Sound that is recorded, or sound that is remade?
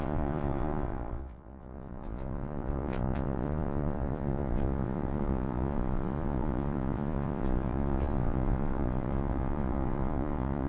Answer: remade